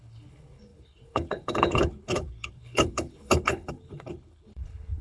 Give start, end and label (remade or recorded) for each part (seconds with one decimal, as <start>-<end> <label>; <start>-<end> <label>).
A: 0.0-5.0 remade